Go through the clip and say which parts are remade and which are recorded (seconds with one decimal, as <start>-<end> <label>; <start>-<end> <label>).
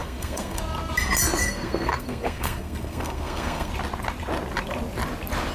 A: 0.0-0.6 remade; 0.6-1.4 recorded; 1.4-3.7 remade; 3.7-5.5 recorded